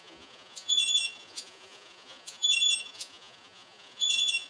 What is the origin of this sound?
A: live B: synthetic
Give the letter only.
B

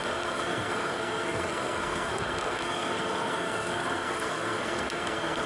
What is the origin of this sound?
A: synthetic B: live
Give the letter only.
A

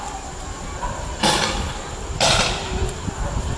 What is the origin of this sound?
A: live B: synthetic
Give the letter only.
B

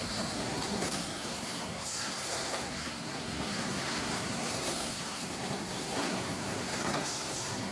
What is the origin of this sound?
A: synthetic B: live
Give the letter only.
A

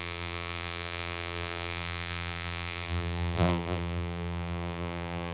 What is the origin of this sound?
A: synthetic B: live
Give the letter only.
A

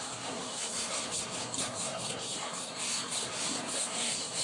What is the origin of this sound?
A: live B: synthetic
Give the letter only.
B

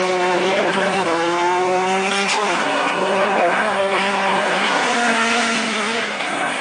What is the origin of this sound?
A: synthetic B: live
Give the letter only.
A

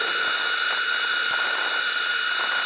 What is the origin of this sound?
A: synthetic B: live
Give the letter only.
B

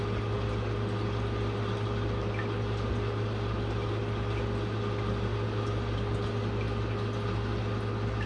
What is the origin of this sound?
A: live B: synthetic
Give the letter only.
A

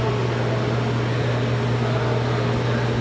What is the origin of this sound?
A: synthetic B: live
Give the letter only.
B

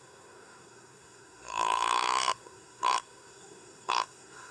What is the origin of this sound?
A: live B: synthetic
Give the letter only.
B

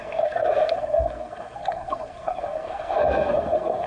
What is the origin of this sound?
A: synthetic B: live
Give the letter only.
A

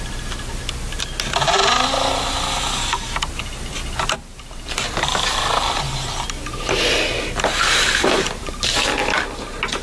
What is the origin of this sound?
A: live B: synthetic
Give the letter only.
A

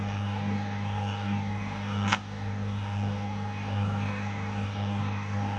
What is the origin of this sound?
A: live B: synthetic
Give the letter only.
B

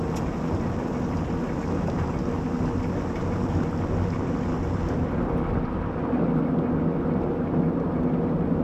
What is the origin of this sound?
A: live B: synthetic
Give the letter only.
A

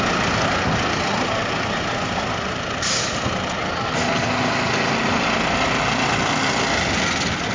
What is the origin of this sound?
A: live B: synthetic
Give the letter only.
A